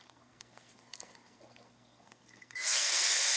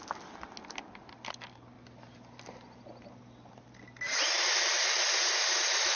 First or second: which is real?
second